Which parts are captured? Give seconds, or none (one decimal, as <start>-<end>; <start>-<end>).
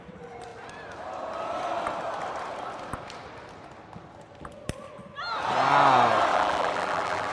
0.0-6.3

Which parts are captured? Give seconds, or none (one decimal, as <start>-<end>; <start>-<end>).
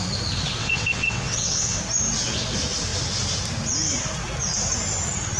0.0-0.6; 1.8-5.4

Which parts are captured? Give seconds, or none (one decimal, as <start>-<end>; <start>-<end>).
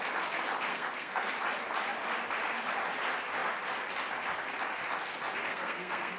0.0-0.7; 1.3-5.5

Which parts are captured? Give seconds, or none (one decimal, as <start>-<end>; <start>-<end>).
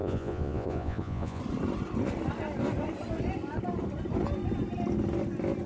1.4-5.7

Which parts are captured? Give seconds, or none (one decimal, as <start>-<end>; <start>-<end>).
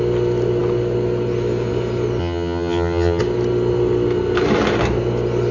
0.0-2.2; 3.2-5.5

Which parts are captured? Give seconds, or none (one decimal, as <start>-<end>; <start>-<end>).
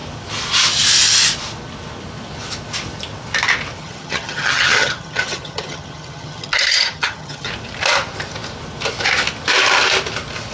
0.0-3.8; 7.5-10.5